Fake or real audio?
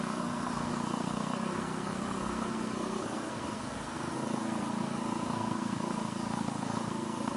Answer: fake